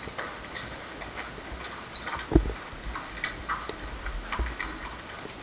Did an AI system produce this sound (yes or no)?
no